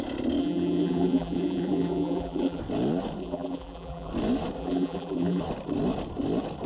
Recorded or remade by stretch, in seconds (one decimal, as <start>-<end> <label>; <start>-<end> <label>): 0.0-0.4 recorded; 0.4-2.6 remade; 2.6-3.2 recorded; 3.2-4.1 remade; 4.1-4.6 recorded; 4.6-5.4 remade; 5.4-6.7 recorded